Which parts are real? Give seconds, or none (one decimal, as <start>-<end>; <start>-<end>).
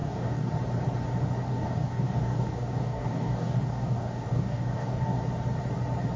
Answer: 0.5-1.5; 5.2-6.2